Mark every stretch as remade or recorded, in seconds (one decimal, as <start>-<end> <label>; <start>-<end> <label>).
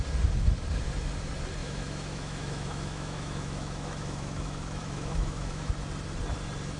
0.0-1.6 recorded; 1.6-5.7 remade; 5.7-6.8 recorded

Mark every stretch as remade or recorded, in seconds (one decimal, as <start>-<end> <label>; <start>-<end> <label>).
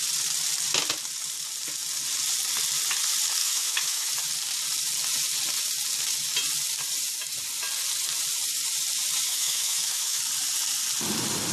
0.0-3.4 recorded; 3.4-4.1 remade; 4.1-9.3 recorded; 9.3-10.2 remade; 10.2-11.5 recorded